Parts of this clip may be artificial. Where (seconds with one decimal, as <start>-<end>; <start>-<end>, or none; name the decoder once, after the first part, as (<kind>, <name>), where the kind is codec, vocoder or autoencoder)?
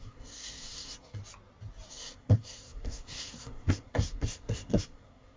0.0-1.2 (codec, SNAC); 1.9-5.4